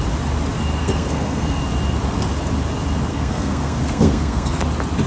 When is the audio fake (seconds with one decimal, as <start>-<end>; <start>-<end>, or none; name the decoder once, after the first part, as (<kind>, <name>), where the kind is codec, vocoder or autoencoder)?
0.8-1.6 (codec, SNAC); 3.1-4.6